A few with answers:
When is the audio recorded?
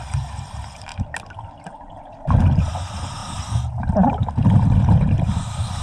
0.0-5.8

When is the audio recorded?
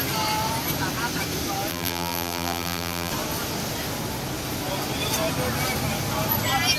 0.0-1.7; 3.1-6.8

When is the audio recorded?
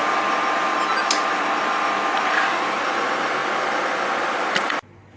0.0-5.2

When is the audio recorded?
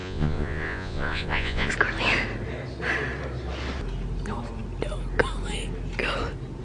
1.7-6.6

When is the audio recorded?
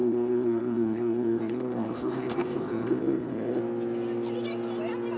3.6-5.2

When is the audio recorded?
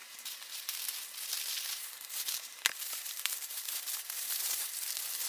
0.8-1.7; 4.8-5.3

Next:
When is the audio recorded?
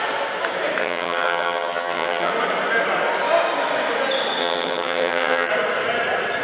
0.0-0.8; 2.3-4.4; 5.5-6.4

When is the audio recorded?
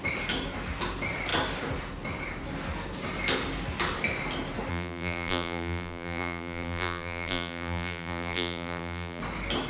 0.0-4.7; 9.2-9.7